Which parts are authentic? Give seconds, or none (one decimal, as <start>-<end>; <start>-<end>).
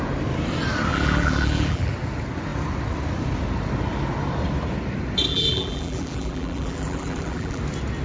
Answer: 0.0-0.9; 1.9-5.3; 7.6-8.0